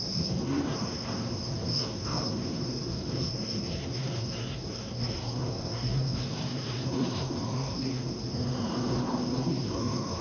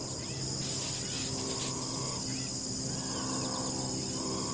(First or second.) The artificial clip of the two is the first